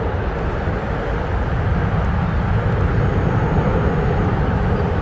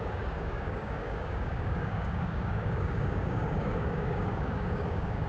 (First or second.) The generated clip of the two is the second